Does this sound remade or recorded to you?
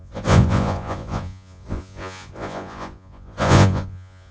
remade